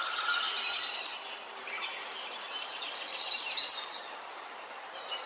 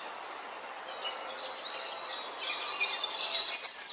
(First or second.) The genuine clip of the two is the second